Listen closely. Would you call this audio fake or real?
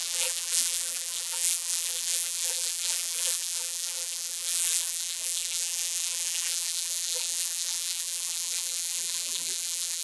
fake